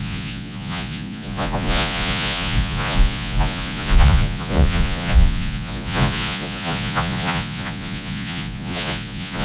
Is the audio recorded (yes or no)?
no